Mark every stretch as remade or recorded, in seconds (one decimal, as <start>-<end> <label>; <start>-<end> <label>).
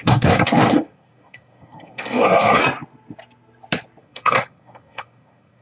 0.0-2.6 remade; 2.6-4.0 recorded; 4.0-5.6 remade